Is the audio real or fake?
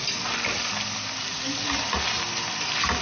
real